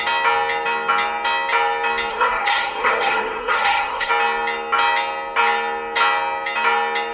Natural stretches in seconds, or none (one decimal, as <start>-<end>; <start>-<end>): 0.0-2.1; 4.1-7.1